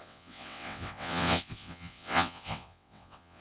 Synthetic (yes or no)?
yes